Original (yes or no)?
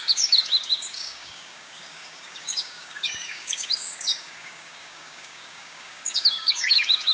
no